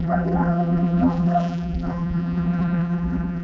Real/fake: fake